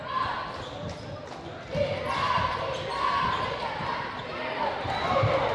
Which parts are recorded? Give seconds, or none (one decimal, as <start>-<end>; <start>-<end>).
0.0-5.5